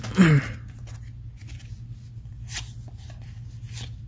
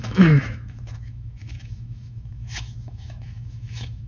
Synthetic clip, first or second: second